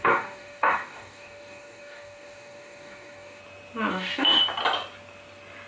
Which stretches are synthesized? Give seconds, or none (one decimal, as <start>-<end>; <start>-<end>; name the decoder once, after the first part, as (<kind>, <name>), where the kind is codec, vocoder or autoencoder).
0.0-3.4 (codec, DAC); 3.9-4.4